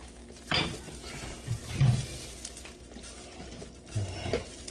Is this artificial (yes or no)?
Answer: no